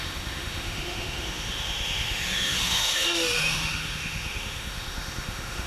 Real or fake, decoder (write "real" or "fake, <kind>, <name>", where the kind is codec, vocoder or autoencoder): fake, autoencoder, DAC-VAE